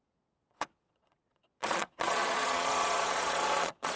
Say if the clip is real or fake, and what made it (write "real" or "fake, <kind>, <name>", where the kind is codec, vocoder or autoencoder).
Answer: fake, vocoder, Vocos